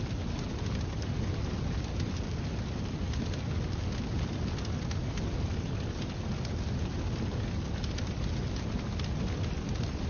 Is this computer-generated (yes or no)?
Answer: no